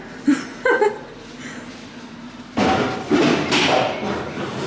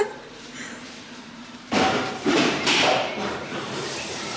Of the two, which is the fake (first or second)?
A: second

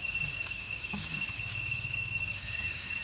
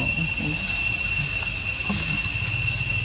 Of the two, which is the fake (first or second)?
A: first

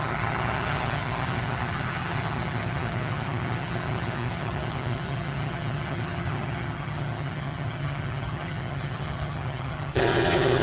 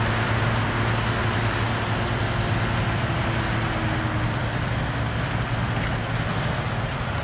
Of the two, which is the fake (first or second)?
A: first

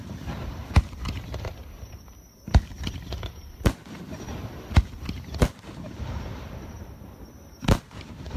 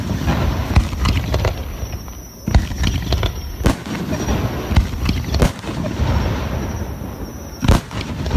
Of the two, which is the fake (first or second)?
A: first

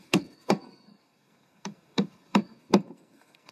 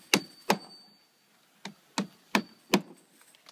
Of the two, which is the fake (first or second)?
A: first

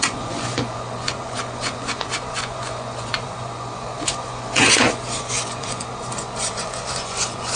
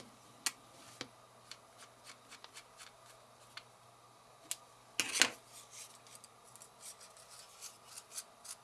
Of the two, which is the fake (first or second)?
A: first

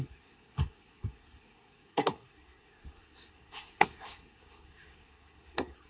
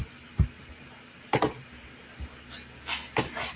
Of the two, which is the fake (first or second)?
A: first